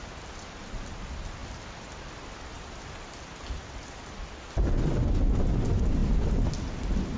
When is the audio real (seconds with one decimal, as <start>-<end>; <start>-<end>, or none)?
0.0-7.2